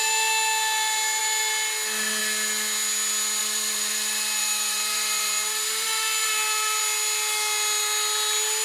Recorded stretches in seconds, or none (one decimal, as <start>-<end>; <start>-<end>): 0.0-3.4; 6.8-8.6